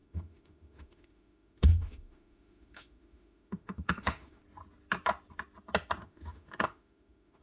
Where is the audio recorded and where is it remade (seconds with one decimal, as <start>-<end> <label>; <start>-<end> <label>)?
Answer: 0.0-4.4 remade; 4.4-6.0 recorded; 6.0-7.4 remade